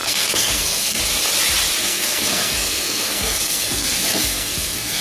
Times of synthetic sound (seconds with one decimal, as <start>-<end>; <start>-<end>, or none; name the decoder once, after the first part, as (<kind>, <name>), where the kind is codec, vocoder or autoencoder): 0.0-1.0 (codec, SNAC); 1.8-5.0